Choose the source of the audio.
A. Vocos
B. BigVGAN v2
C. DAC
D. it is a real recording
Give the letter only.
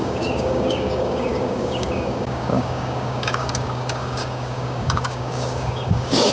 C